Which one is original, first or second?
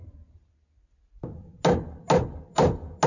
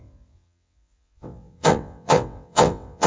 first